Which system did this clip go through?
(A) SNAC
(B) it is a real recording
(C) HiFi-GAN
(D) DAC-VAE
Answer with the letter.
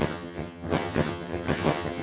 C